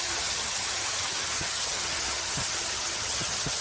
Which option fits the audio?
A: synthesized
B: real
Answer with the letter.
A